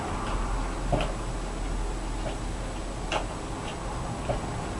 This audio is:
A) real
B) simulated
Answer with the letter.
A